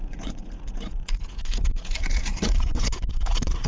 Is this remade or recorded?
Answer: remade